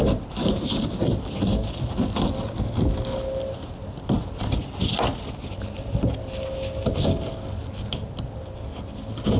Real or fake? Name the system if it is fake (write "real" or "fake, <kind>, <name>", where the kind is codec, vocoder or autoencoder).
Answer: real